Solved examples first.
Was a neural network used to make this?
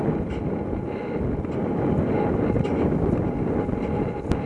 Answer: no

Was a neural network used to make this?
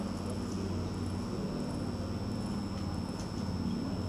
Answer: no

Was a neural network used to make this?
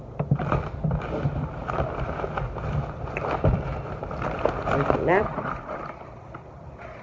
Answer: yes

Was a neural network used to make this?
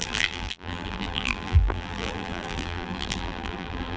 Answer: yes